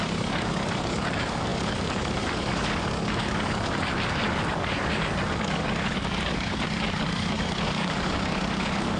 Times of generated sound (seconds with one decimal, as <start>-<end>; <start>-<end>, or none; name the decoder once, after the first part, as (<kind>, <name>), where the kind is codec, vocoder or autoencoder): 0.0-9.0 (codec, DAC)